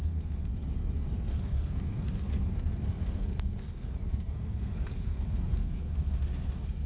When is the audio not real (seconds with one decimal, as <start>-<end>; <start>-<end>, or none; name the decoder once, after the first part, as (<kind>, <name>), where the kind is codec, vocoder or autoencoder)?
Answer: 0.0-0.5 (codec, SNAC); 1.1-6.9